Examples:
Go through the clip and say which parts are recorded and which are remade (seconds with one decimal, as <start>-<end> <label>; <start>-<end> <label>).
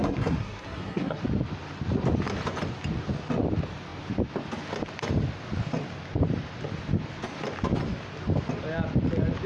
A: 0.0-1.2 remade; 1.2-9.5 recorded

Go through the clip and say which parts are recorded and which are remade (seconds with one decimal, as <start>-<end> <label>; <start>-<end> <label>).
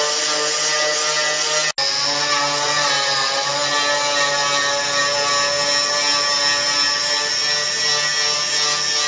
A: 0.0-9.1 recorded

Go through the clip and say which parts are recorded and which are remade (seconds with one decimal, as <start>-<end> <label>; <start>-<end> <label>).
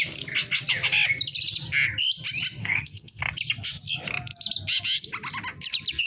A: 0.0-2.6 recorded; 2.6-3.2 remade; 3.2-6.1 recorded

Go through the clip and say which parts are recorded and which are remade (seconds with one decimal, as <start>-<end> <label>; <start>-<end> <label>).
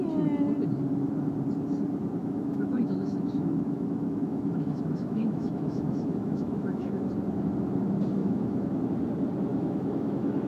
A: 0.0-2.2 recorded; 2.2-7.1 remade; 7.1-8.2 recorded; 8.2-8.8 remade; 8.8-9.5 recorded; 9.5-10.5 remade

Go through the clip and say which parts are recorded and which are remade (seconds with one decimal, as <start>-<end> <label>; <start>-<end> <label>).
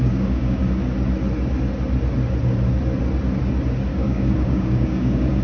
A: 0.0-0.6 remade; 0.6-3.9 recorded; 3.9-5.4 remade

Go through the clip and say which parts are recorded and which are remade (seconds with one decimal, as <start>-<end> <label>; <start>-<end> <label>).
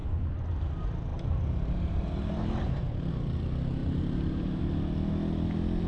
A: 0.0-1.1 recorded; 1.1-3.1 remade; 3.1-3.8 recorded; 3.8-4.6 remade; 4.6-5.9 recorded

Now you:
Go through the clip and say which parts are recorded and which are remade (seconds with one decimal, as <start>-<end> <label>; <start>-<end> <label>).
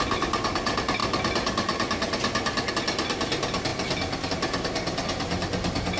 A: 0.0-6.0 recorded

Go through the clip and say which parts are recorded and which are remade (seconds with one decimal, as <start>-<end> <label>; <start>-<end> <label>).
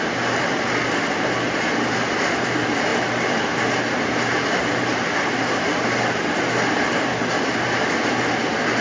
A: 0.0-8.8 recorded